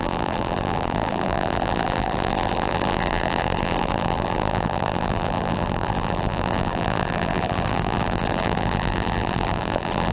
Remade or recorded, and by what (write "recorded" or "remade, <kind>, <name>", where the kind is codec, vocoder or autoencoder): remade, vocoder, BigVGAN v2